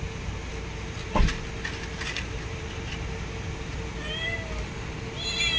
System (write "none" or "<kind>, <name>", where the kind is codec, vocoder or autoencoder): none